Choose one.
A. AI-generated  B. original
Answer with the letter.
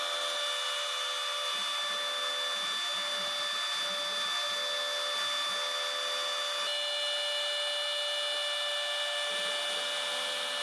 B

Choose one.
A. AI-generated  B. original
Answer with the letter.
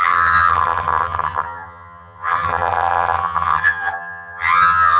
A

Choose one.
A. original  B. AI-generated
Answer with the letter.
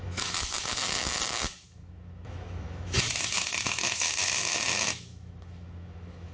B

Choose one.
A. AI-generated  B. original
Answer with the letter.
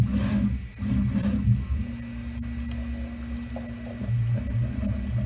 B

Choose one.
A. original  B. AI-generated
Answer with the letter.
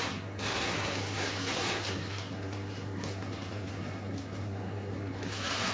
B